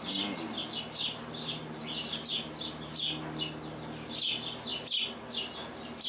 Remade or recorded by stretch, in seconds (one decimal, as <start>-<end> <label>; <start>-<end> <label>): 0.0-6.1 recorded